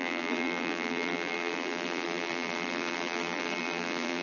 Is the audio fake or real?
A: fake